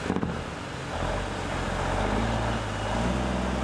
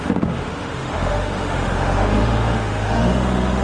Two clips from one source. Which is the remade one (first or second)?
second